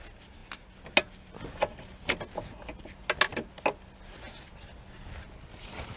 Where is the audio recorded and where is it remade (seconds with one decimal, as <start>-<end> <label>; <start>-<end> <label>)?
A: 0.0-6.0 recorded